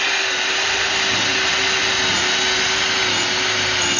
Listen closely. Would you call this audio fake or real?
real